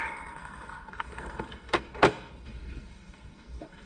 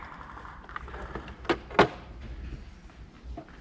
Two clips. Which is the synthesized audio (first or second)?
first